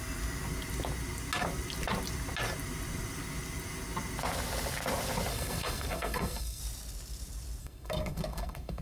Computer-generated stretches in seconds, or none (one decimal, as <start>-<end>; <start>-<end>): 5.3-6.6; 7.6-8.8